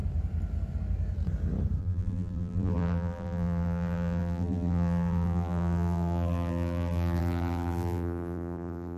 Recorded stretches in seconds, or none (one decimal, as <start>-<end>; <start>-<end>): 0.0-1.8